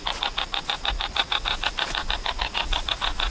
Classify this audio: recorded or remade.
remade